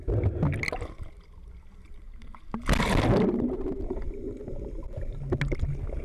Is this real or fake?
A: real